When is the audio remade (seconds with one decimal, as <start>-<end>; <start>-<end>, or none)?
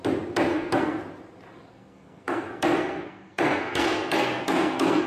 0.5-1.0; 1.7-5.1